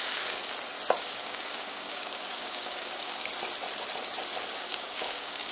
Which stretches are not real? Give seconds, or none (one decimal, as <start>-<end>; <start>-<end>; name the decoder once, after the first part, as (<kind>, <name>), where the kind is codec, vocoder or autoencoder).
0.0-0.4 (codec, DAC); 1.0-3.3; 4.5-5.5